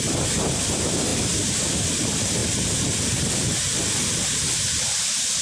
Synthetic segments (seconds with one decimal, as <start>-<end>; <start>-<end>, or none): 0.0-1.1; 1.7-2.4; 3.4-3.8; 4.7-5.4